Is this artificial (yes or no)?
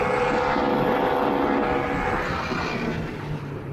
no